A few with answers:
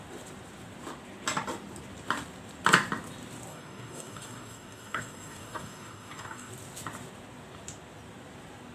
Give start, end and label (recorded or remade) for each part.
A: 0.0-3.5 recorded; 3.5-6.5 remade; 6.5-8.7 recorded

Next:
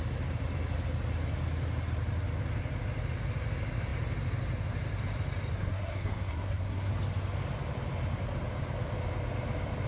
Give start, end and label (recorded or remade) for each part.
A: 0.0-5.6 recorded; 5.6-6.9 remade; 6.9-9.9 recorded

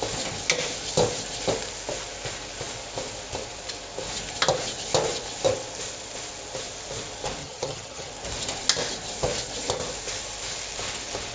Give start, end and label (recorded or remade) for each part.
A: 0.0-7.4 recorded; 7.4-8.1 remade; 8.1-11.3 recorded